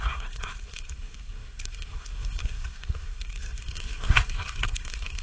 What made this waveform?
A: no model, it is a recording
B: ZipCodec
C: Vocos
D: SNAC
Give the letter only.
D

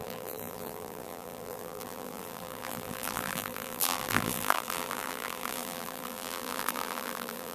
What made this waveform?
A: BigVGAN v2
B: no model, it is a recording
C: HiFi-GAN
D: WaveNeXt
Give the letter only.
A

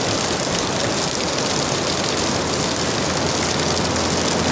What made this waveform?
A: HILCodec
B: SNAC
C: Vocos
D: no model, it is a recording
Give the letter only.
D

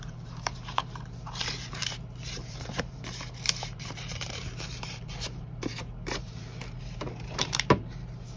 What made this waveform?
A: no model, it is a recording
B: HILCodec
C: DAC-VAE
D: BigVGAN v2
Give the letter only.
D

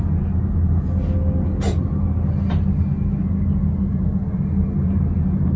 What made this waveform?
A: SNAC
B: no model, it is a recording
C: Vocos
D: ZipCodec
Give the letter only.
B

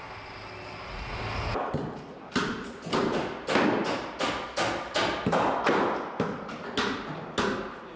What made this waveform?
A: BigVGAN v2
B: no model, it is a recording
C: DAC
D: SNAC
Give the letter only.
B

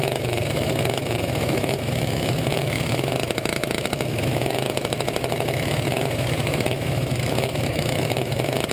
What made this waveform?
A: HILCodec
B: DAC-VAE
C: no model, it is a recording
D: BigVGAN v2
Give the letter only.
B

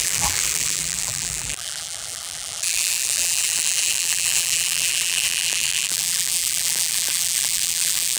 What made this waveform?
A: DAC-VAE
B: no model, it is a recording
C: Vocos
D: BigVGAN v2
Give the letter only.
D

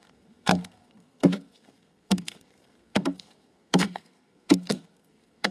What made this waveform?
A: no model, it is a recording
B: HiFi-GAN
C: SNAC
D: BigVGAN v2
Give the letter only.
C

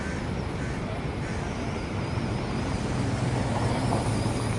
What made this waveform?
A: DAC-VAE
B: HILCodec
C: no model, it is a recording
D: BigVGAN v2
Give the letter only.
C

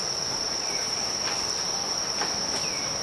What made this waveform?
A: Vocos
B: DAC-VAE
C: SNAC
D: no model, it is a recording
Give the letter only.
D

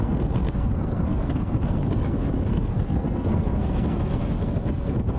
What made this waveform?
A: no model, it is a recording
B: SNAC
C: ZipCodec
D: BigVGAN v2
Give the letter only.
B